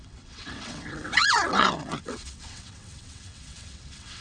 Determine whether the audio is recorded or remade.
remade